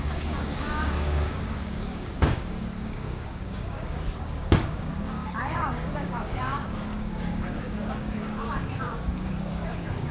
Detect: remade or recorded remade